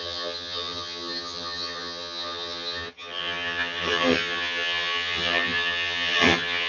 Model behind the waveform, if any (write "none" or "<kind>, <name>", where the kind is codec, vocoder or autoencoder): vocoder, HiFi-GAN